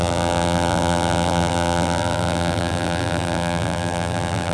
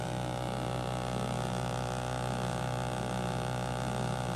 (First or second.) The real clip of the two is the second